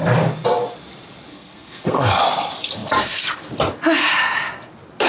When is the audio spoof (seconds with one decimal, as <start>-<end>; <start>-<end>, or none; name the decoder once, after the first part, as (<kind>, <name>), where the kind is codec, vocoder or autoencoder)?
1.3-2.2 (codec, SNAC)